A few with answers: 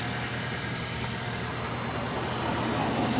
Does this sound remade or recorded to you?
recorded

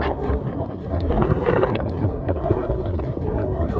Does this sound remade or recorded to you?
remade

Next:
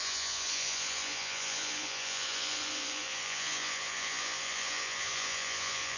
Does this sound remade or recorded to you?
remade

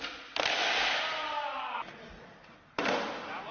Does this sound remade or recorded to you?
recorded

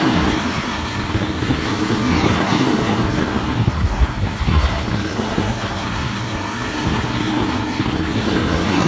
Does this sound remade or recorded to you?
remade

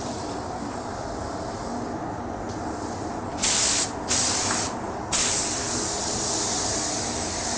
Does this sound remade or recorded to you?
recorded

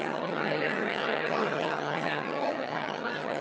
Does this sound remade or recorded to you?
remade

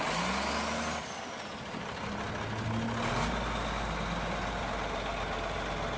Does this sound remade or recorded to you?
recorded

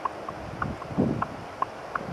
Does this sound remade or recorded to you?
recorded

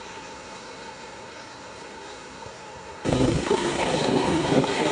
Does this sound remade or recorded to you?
remade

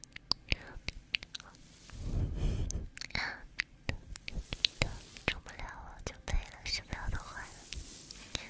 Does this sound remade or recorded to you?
recorded